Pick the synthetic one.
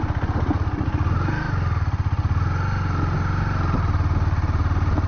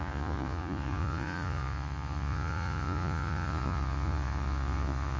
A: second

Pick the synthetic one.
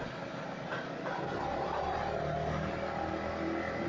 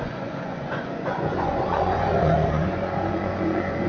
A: second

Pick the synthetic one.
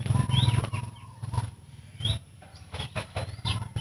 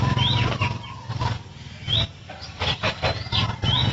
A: first